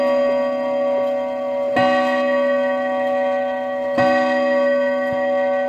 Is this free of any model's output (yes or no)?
yes